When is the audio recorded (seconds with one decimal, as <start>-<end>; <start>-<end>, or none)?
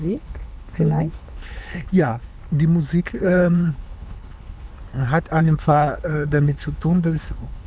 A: 2.4-3.0; 4.7-5.4